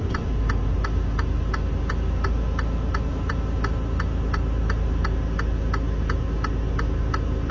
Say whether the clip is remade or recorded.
recorded